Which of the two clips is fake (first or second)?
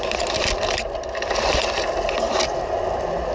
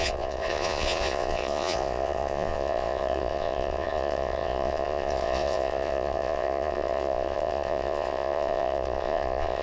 second